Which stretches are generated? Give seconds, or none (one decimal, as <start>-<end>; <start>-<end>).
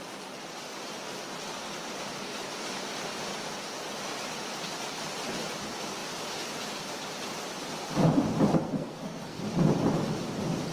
8.6-9.4